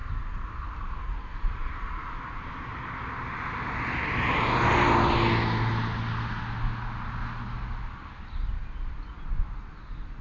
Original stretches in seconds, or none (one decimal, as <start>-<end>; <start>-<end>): 0.0-10.2